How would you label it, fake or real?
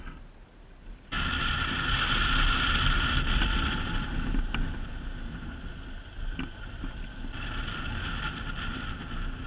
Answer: real